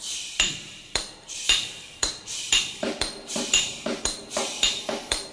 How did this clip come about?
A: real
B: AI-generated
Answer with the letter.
B